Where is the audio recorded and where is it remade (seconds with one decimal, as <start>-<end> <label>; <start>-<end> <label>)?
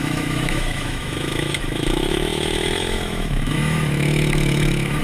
0.0-5.0 remade